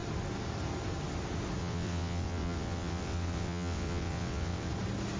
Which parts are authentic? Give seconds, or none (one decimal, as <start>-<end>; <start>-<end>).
0.0-1.6; 4.7-5.2